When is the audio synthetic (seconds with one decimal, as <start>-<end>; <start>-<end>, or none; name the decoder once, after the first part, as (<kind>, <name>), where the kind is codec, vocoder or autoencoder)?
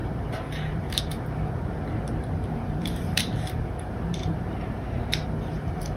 0.0-1.0 (vocoder, BigVGAN v2); 2.2-6.0